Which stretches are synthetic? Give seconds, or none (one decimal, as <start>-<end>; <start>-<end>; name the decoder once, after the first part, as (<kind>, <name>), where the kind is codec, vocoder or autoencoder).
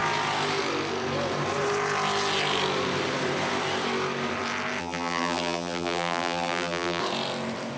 4.8-7.0 (vocoder, BigVGAN v2)